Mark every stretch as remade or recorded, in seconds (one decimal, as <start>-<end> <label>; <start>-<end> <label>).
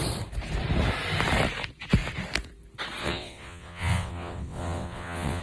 0.0-3.0 recorded; 3.0-5.4 remade